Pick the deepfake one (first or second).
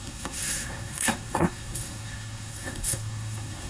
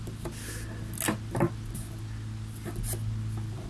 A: first